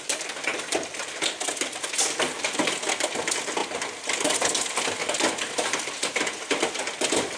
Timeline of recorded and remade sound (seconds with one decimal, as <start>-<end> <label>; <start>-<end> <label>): 0.0-7.4 recorded